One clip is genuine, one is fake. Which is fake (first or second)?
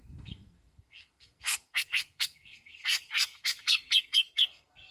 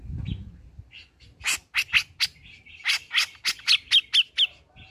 first